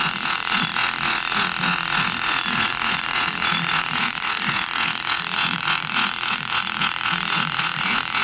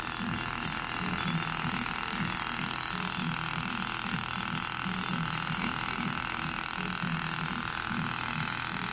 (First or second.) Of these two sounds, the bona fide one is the second